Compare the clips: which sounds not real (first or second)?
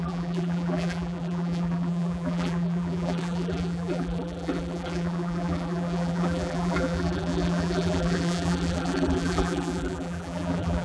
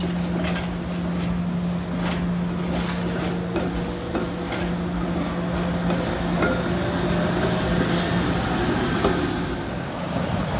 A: first